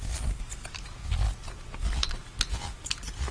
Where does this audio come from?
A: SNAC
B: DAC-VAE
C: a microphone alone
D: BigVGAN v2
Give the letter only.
C